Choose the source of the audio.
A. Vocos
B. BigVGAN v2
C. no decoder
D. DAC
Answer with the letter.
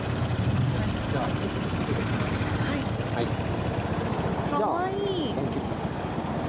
C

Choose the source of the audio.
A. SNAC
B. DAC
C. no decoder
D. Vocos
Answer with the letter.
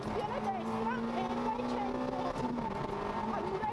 C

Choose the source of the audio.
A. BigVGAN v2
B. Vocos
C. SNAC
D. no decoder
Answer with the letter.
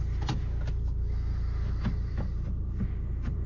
D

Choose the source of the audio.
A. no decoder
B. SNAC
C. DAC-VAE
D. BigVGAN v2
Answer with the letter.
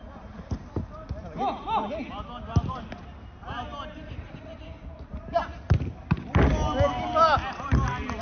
A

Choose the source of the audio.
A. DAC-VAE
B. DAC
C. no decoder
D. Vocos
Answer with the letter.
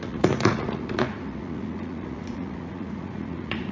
D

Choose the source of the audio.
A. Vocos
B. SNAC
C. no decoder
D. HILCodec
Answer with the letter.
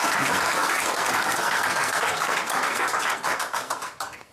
B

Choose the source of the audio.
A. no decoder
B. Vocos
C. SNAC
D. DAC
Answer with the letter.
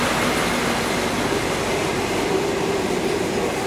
A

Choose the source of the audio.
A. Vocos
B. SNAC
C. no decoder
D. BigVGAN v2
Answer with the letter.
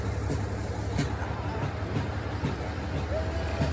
C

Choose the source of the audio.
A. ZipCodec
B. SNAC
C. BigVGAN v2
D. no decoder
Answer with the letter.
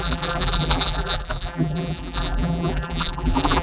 C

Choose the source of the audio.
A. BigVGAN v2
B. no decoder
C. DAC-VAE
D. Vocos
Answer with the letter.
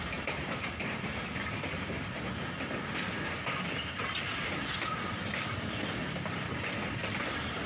B